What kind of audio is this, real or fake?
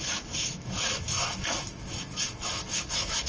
fake